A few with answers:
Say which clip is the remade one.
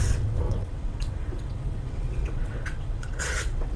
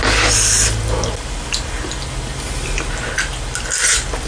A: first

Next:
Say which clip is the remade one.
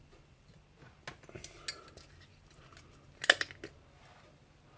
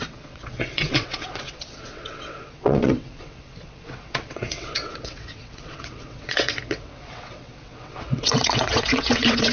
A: second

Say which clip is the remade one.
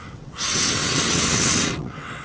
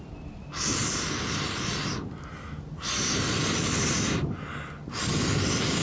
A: first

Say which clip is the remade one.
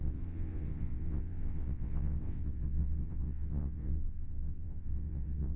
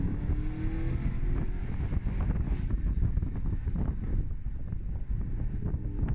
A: first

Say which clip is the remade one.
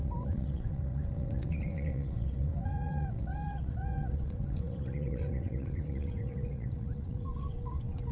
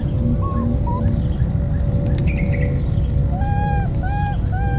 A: first